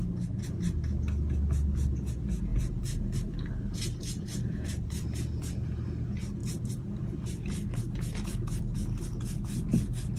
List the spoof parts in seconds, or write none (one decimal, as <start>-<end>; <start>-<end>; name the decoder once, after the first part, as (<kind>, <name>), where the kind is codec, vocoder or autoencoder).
2.5-3.5 (vocoder, BigVGAN v2); 6.4-7.8